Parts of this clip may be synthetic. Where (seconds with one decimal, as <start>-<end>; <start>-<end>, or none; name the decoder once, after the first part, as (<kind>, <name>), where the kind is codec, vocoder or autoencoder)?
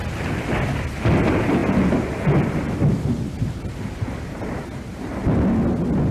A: none